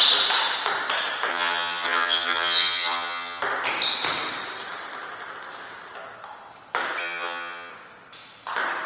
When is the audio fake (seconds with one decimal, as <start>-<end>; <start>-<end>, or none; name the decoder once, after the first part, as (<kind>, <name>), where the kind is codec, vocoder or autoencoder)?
1.3-3.4 (vocoder, HiFi-GAN); 7.0-7.7